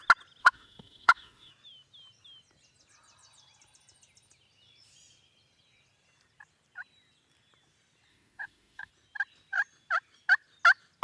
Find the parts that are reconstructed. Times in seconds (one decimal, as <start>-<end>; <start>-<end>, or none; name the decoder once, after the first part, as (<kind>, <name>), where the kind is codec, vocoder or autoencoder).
0.4-1.5 (autoencoder, DAC-VAE); 8.1-8.9